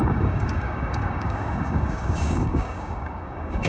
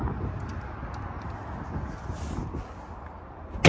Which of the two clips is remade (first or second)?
first